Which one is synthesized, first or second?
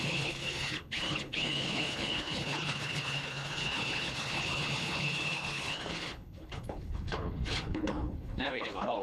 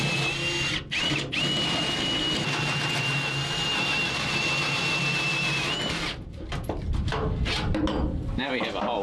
first